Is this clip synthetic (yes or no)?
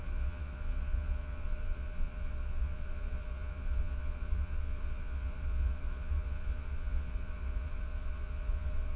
yes